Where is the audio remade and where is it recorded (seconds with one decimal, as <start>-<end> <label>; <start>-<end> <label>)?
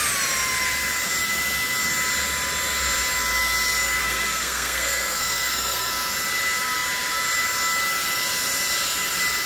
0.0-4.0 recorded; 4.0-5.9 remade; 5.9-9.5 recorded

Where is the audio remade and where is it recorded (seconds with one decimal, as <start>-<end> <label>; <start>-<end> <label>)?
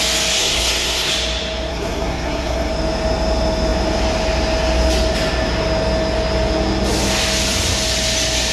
0.0-0.4 recorded; 0.4-1.1 remade; 1.1-1.7 recorded; 1.7-2.7 remade; 2.7-8.5 recorded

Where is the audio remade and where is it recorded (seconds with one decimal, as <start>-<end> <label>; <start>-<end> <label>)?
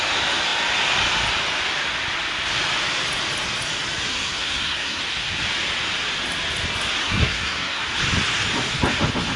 0.0-4.1 recorded; 4.1-5.0 remade; 5.0-7.0 recorded; 7.0-7.8 remade; 7.8-9.4 recorded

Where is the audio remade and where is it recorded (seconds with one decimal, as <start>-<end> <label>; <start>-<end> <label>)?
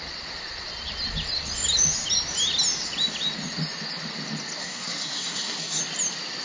0.0-4.6 recorded; 4.6-5.8 remade; 5.8-6.4 recorded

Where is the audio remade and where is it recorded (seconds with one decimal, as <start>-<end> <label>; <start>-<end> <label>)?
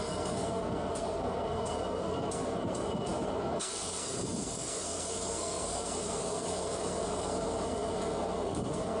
0.0-9.0 remade